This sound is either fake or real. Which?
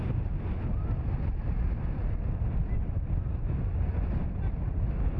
real